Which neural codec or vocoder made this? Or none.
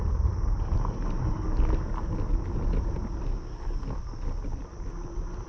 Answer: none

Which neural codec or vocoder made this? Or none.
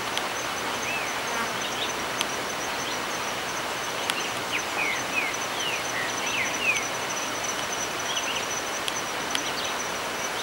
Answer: none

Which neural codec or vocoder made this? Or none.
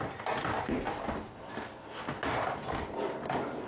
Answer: none